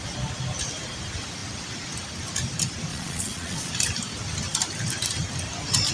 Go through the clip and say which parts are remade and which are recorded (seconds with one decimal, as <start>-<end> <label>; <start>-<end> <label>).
0.0-2.9 recorded; 2.9-3.7 remade; 3.7-5.9 recorded